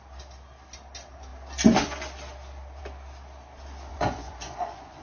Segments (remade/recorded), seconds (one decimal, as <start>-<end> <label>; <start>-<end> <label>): 0.0-3.9 recorded; 3.9-5.0 remade